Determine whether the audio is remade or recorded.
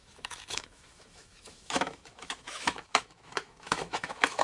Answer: remade